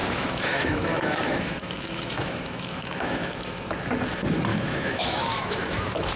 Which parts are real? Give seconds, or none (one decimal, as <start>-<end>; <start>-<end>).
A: 3.7-4.5